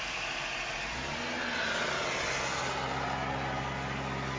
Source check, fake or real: real